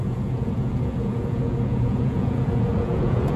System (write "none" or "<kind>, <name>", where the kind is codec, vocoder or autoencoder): vocoder, Vocos